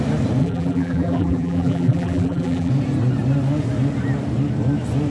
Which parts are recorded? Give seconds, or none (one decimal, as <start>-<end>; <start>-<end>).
0.0-0.4; 2.7-5.1